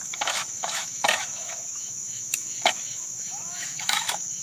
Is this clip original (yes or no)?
no